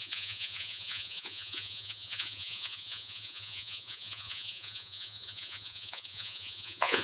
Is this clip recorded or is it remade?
remade